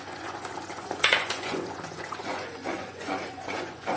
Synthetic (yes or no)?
yes